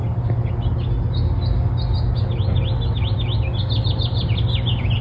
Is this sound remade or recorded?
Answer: recorded